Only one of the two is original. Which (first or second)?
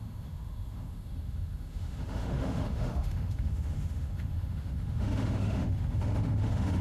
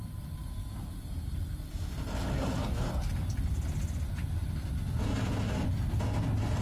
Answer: second